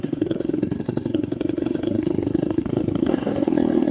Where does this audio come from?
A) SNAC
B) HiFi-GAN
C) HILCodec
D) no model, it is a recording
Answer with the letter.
A